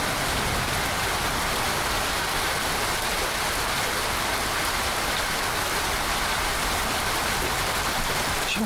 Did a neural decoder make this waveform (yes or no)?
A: no